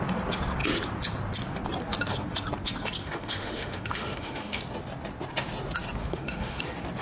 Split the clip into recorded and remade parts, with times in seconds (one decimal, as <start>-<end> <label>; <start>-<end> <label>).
0.0-3.0 recorded; 3.0-4.6 remade; 4.6-6.0 recorded; 6.0-6.6 remade; 6.6-7.0 recorded